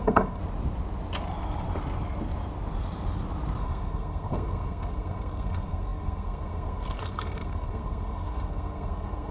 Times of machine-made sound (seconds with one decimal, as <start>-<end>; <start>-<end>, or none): 0.0-0.4; 3.6-9.3